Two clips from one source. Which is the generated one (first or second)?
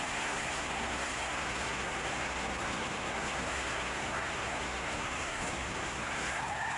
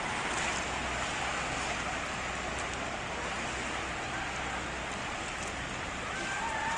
first